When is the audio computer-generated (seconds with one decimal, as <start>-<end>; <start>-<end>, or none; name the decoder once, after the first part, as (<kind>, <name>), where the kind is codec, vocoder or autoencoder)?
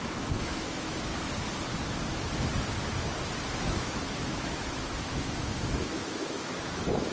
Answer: 0.0-1.1 (autoencoder, DAC-VAE); 3.6-7.1